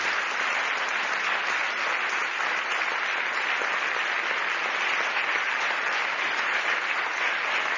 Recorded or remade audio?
recorded